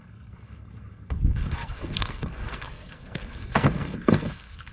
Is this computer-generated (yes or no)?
yes